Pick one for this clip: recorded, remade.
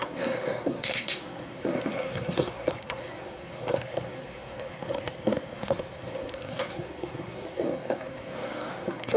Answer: remade